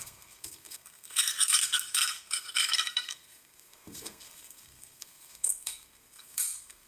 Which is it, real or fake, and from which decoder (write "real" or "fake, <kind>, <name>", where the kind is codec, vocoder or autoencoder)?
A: fake, codec, SNAC